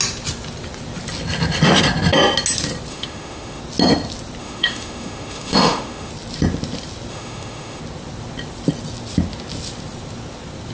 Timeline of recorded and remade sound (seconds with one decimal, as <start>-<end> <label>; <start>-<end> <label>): 0.0-2.9 recorded; 2.9-3.6 remade; 3.6-4.4 recorded; 4.4-6.1 remade; 6.1-7.1 recorded; 7.1-7.8 remade; 7.8-10.7 recorded